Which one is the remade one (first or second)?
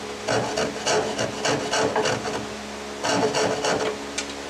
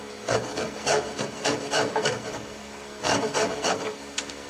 second